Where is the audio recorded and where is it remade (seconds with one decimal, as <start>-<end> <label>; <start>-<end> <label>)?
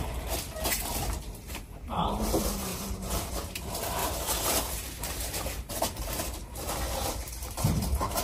0.0-2.7 recorded; 2.7-3.3 remade; 3.3-4.0 recorded; 4.0-8.2 remade